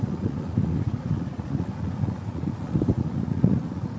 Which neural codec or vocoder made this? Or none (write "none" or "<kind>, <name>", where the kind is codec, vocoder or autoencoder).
vocoder, Vocos